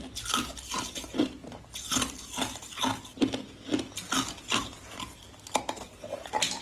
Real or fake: real